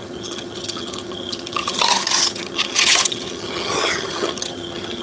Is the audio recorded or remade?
remade